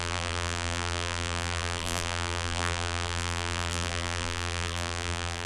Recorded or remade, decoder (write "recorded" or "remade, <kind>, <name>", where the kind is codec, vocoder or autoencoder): remade, vocoder, BigVGAN v2